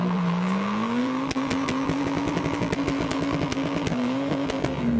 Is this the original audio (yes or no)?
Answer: no